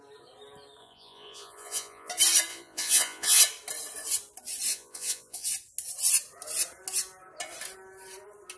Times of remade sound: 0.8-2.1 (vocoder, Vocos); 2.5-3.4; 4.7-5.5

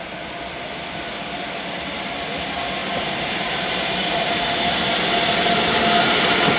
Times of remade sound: 2.8-3.7 (vocoder, BigVGAN v2)

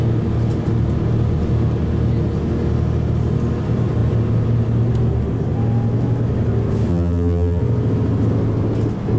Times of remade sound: 6.9-7.6 (vocoder, BigVGAN v2)

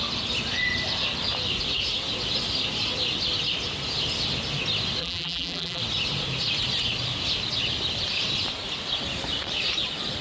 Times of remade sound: 5.0-5.8 (vocoder, BigVGAN v2)

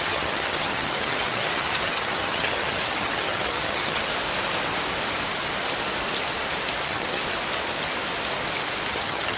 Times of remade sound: 0.0-4.1 (vocoder, HiFi-GAN); 6.8-7.2; 8.9-9.4

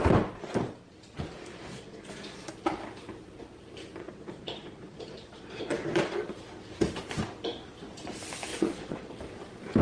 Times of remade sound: 1.5-2.5 (vocoder, Vocos); 4.0-6.0; 8.5-9.1

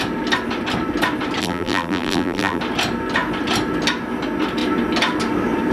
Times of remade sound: 1.4-2.6 (vocoder, BigVGAN v2)